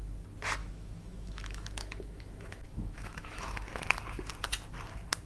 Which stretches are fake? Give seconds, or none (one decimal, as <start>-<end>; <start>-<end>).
0.6-3.8